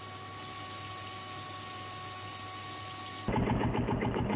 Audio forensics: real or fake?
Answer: real